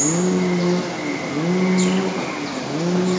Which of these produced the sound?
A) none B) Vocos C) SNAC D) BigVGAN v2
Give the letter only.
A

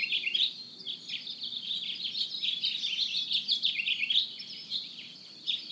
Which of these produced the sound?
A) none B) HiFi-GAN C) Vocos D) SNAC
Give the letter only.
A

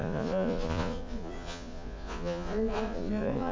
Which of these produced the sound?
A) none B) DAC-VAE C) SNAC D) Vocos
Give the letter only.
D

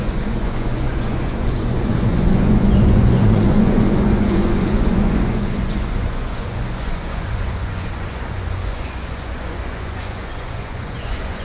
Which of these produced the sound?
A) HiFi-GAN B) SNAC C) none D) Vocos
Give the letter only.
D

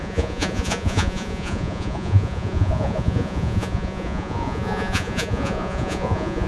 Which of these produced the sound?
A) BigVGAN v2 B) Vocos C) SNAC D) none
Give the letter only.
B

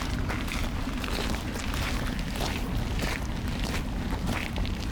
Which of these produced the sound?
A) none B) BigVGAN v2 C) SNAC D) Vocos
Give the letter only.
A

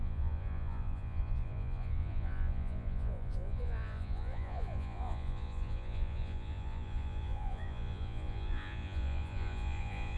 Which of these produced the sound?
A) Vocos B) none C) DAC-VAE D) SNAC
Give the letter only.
A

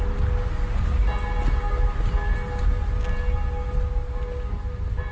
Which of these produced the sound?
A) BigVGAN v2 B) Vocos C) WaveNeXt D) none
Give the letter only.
D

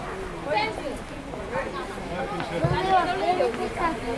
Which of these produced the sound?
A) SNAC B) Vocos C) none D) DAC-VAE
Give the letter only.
C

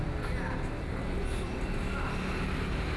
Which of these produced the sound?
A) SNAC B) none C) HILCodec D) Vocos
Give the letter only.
B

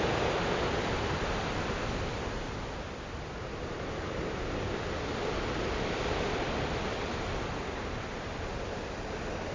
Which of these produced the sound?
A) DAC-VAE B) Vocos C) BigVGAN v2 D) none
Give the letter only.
D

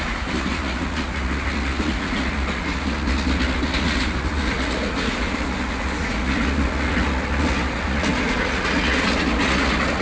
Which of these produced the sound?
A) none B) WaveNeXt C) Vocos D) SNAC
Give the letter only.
C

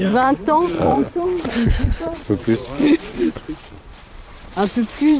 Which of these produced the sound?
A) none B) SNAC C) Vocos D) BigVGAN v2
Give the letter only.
C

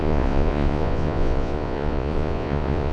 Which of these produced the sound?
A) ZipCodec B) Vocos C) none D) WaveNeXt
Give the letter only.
B